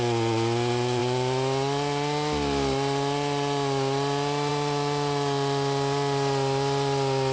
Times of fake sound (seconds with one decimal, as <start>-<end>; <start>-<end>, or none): none